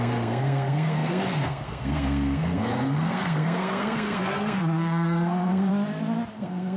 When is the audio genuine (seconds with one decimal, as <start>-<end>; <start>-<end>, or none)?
5.7-6.3